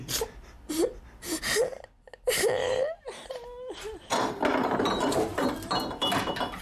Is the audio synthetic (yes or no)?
no